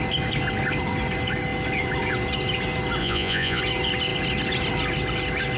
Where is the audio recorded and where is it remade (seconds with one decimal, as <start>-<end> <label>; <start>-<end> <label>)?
0.0-3.0 recorded; 3.0-3.6 remade; 3.6-5.6 recorded